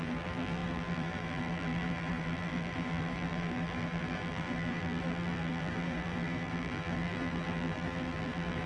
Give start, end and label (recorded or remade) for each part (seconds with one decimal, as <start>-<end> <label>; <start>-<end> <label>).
0.0-8.7 remade